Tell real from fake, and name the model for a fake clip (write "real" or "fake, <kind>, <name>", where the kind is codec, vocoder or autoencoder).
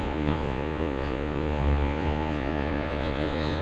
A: fake, vocoder, Vocos